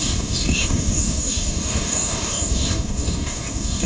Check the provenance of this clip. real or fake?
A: fake